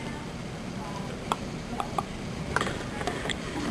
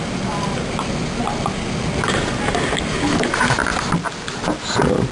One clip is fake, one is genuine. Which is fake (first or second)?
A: first